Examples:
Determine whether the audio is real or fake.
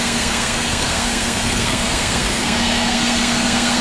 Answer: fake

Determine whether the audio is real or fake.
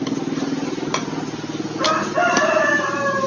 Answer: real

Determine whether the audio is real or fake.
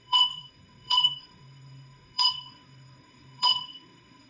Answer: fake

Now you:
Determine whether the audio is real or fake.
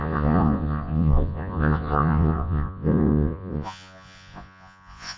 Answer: fake